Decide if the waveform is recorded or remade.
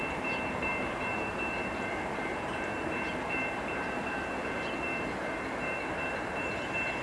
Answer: remade